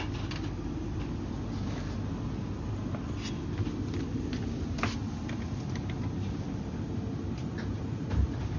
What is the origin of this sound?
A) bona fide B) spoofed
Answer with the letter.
A